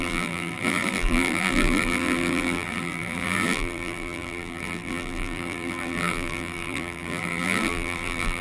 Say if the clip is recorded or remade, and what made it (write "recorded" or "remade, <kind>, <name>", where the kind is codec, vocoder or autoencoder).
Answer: remade, vocoder, BigVGAN v2